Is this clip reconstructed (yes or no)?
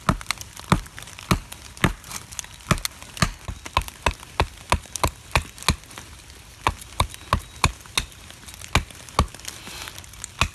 no